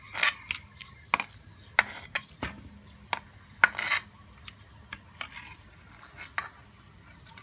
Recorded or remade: recorded